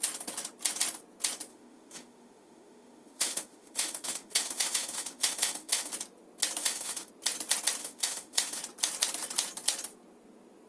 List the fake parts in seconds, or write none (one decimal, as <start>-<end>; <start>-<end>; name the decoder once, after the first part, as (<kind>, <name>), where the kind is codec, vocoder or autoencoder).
1.5-5.9 (autoencoder, DAC-VAE); 6.6-7.1; 7.8-8.6